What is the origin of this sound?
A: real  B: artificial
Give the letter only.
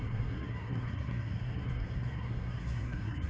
B